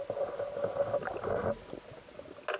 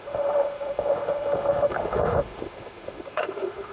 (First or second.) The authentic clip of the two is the first